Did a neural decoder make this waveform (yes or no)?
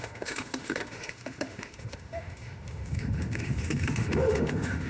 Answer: yes